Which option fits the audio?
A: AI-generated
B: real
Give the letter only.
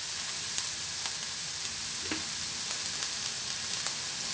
B